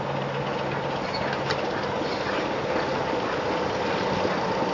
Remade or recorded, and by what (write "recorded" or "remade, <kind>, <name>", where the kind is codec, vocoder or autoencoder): recorded